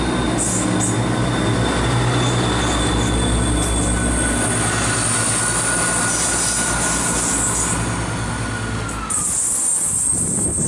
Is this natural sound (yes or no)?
yes